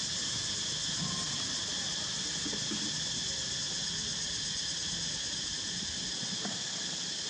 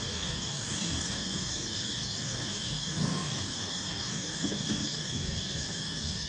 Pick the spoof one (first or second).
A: second